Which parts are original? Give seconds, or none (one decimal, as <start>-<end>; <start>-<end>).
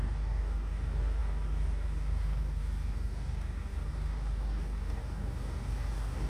none